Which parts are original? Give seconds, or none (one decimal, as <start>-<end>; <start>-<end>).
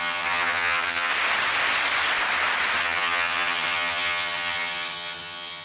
1.1-2.8